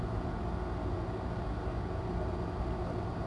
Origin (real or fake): real